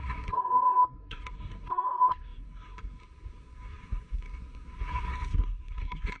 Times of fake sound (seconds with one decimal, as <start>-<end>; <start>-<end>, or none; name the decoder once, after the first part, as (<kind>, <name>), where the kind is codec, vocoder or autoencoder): 0.0-6.2 (codec, SNAC)